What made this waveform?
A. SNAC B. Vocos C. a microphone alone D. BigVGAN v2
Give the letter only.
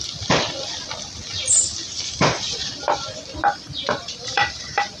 D